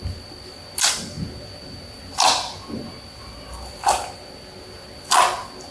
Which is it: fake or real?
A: real